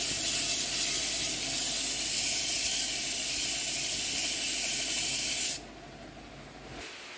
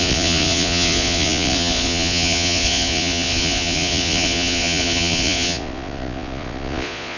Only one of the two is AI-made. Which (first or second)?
second